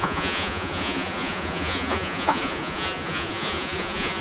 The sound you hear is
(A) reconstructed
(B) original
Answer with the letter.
A